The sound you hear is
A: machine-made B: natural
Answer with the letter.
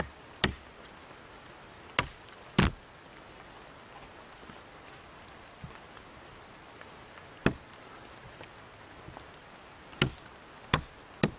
B